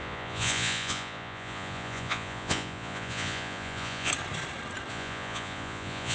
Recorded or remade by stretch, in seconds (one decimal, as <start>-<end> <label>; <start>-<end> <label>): 0.0-4.1 remade; 4.1-4.9 recorded; 4.9-6.1 remade